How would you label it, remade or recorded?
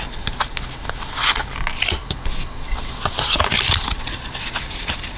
recorded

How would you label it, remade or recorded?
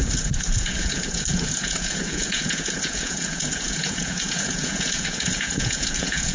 remade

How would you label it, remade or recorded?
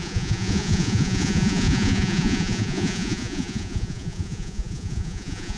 remade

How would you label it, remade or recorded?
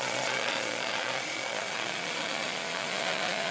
remade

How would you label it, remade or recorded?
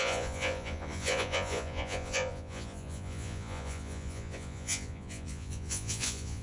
remade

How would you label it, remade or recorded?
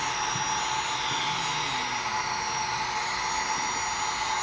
recorded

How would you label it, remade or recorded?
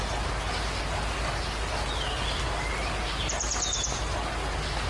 recorded